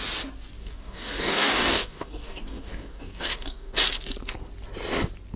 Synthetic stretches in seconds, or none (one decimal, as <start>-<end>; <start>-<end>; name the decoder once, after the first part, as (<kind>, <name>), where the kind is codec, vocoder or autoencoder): 0.6-3.8 (codec, DAC)